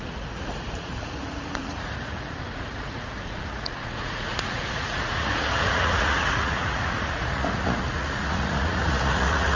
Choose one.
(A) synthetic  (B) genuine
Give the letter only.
A